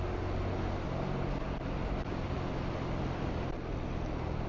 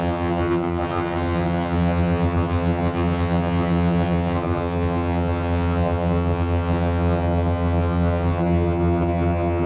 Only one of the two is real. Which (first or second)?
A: first